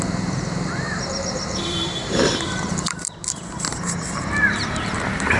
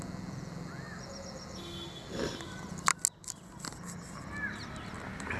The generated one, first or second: first